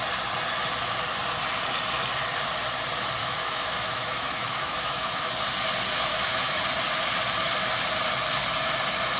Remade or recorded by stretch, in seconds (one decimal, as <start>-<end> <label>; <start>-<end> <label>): 0.0-3.2 recorded; 3.2-5.3 remade; 5.3-6.1 recorded; 6.1-6.6 remade; 6.6-9.2 recorded